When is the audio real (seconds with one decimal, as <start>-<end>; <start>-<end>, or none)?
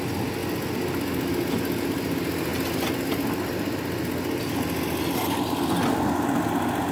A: 0.0-6.9